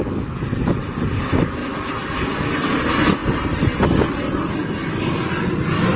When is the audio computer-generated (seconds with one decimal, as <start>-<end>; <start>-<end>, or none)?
none

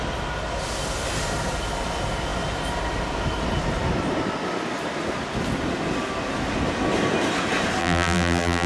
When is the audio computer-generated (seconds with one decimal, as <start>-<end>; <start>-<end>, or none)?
7.8-8.7

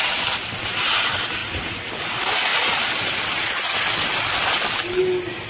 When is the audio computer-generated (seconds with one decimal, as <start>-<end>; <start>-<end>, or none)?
1.4-1.9

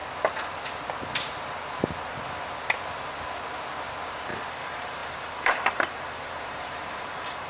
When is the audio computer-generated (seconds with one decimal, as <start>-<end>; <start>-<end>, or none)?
4.5-7.5

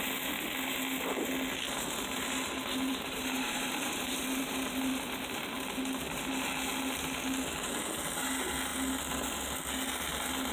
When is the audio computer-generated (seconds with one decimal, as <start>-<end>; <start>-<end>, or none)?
2.9-4.4

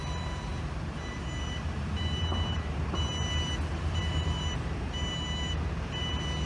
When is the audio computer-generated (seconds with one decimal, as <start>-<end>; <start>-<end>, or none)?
0.0-3.5; 4.0-6.5

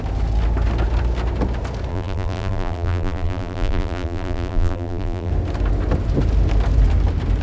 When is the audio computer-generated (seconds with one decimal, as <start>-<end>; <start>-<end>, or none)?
1.9-5.3

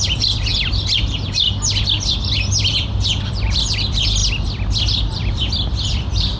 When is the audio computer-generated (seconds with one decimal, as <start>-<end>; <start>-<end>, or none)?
0.0-4.2; 5.1-6.4